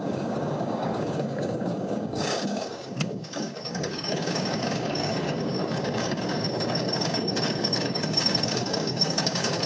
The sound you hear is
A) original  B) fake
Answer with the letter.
B